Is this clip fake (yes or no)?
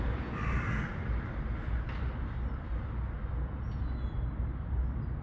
no